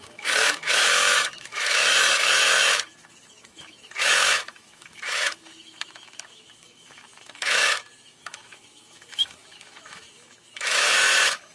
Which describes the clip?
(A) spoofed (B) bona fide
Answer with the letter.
A